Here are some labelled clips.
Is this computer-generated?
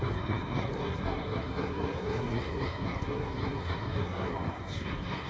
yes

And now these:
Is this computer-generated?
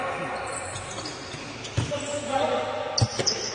no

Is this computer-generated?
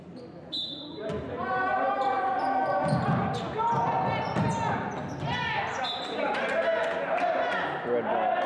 no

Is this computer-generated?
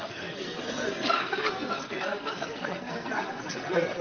yes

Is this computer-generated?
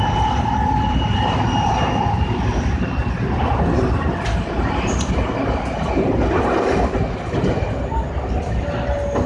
no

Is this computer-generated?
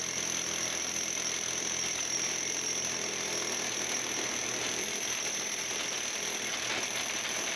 no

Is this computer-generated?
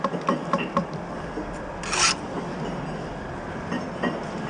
no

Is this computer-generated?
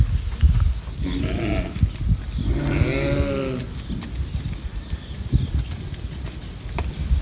no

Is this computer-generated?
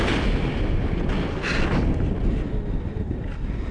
no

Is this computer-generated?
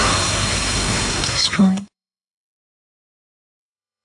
yes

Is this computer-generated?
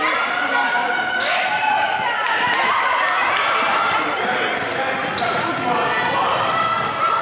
no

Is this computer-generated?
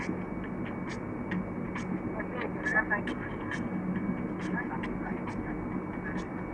no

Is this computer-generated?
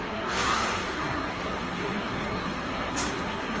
yes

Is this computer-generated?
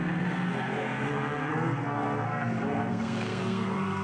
yes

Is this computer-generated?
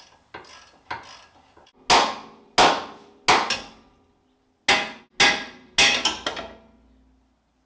no